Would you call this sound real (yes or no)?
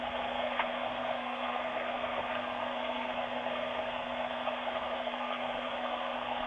no